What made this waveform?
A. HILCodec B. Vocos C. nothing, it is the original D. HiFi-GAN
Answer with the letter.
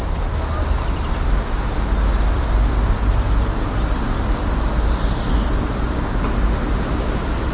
C